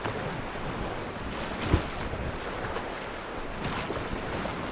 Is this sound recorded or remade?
recorded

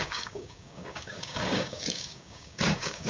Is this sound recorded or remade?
remade